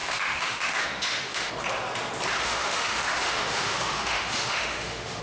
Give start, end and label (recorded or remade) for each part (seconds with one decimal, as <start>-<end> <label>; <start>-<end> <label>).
0.0-1.5 remade; 1.5-2.4 recorded; 2.4-5.2 remade

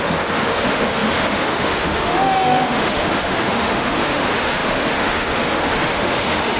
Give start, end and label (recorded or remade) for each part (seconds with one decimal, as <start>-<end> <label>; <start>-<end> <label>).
0.0-6.6 remade

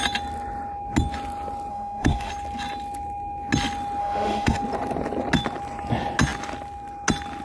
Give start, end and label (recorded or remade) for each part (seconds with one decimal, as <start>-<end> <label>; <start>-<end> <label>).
0.0-1.7 recorded; 1.7-2.3 remade; 2.3-4.0 recorded; 4.0-4.6 remade; 4.6-7.4 recorded